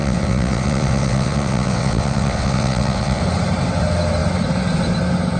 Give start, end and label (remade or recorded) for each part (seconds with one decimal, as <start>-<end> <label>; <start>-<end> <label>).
0.0-3.2 remade; 3.2-5.4 recorded

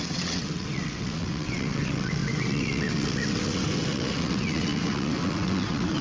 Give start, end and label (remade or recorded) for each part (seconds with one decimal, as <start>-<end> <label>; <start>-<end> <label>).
0.0-6.0 remade

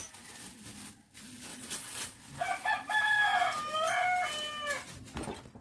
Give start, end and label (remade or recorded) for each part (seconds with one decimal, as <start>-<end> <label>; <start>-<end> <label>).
0.0-1.5 recorded; 1.5-2.2 remade; 2.2-5.6 recorded